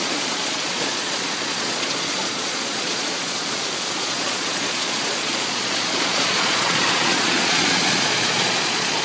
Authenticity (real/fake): fake